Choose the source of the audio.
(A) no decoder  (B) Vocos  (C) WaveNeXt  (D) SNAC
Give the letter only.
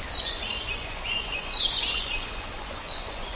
B